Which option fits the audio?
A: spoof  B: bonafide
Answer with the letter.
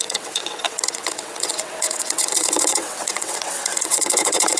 A